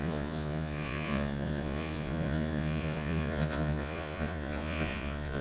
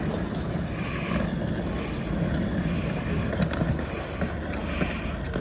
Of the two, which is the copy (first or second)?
first